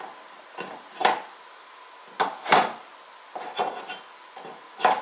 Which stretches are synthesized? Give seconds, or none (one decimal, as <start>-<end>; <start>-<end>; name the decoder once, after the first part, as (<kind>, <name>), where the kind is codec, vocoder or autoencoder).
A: none